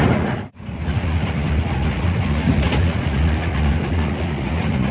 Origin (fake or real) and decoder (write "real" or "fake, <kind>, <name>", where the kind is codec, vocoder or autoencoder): fake, vocoder, Vocos